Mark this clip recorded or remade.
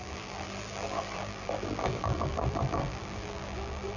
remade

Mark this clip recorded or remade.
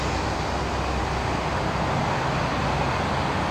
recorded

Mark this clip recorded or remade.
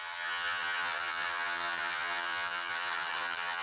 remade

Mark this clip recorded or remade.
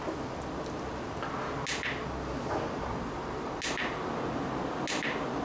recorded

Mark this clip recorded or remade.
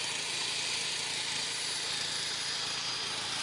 recorded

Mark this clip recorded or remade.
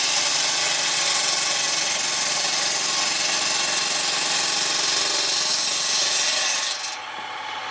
recorded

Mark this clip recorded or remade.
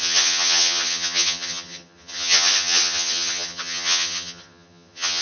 remade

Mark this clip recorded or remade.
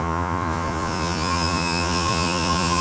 remade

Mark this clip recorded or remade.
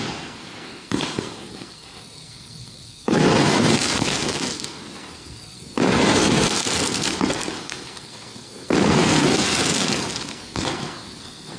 remade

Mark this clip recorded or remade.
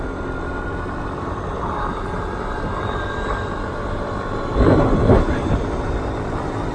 remade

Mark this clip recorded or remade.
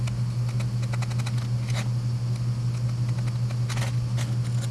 recorded